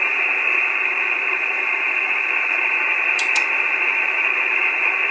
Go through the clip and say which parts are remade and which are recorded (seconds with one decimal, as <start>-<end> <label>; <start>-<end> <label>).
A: 0.0-5.1 remade